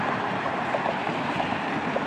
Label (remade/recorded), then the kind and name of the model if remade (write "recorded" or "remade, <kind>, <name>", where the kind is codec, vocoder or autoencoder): recorded